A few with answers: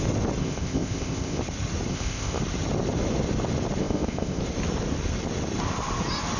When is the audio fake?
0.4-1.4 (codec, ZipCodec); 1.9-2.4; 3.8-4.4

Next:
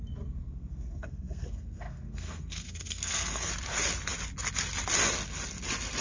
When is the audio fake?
0.4-3.5 (codec, SNAC)

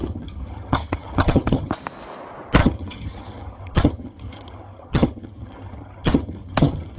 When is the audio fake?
0.0-1.7 (vocoder, HiFi-GAN); 2.6-7.0

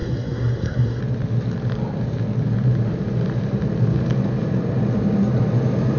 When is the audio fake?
0.0-1.0 (codec, SNAC)

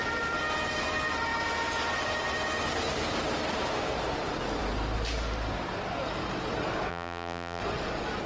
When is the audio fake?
6.9-7.6 (vocoder, BigVGAN v2)

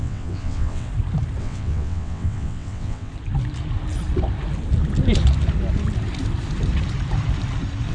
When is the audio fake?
0.0-0.9 (vocoder, WaveNeXt); 1.4-3.1

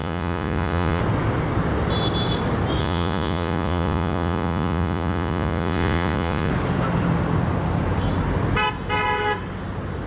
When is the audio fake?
0.0-1.0 (vocoder, Vocos); 2.8-6.5

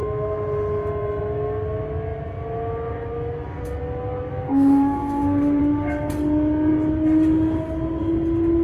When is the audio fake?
4.3-5.6 (codec, SNAC)